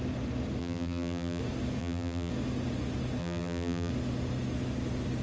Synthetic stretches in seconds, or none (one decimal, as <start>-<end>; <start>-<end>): 0.6-1.4; 1.8-2.3; 3.2-3.9